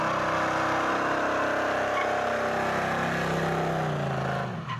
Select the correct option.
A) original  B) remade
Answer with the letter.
A